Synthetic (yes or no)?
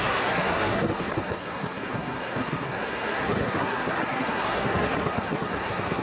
yes